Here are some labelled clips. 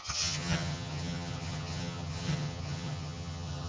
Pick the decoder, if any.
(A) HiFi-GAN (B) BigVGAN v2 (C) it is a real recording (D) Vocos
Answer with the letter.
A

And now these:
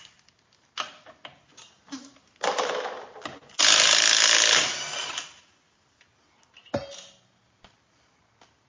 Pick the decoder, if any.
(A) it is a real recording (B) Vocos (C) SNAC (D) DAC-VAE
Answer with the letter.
A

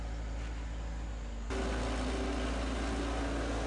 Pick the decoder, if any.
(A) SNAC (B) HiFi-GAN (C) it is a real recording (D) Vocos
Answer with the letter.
C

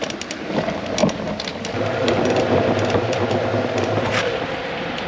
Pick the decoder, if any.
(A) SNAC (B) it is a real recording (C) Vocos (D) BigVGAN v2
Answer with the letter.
B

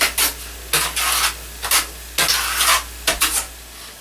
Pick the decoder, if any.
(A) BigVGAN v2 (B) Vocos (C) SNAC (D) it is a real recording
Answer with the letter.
D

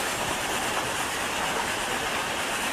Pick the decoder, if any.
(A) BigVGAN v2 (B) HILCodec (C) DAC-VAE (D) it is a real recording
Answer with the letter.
D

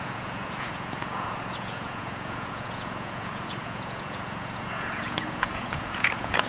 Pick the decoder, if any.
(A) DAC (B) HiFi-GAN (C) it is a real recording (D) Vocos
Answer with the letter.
D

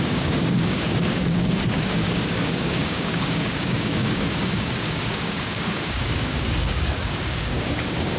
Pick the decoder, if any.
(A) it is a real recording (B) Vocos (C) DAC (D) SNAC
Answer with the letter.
C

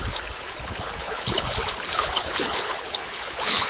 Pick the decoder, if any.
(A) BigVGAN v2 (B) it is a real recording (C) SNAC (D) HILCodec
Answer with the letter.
D